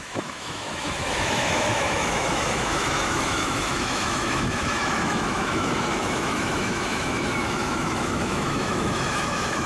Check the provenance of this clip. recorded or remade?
remade